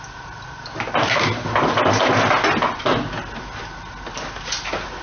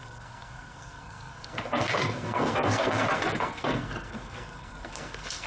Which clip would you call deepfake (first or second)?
second